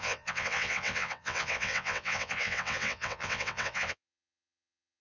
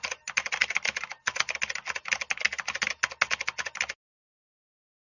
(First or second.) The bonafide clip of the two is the second